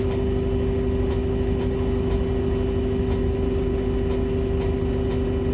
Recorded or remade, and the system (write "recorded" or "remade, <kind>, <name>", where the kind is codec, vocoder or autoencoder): recorded